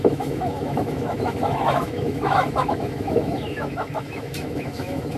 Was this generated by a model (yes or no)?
yes